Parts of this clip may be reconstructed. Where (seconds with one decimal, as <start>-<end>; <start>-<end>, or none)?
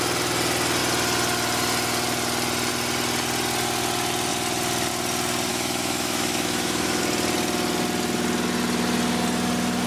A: 5.5-7.0